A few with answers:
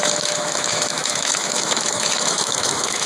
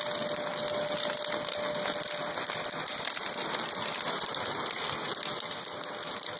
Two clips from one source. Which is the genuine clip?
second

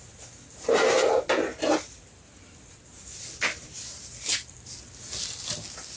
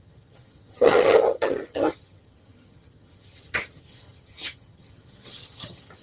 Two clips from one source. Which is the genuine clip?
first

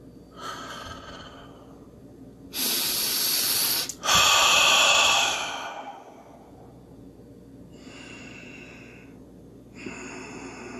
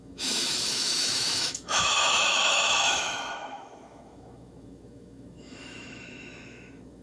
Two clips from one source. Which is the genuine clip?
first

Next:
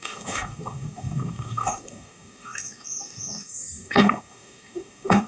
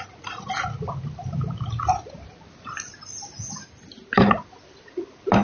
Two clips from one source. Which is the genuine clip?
second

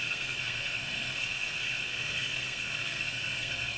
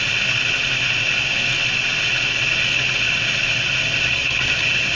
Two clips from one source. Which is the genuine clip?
second